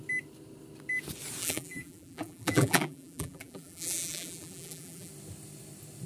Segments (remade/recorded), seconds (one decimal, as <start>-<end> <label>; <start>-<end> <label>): 0.0-1.4 recorded; 1.4-5.1 remade; 5.1-6.1 recorded